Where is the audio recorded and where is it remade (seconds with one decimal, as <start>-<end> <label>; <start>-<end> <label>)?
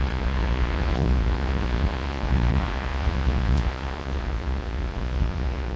0.0-5.8 remade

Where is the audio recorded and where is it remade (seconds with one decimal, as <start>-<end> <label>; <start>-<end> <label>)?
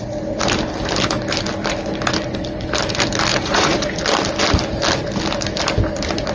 0.0-3.3 recorded; 3.3-4.0 remade; 4.0-6.3 recorded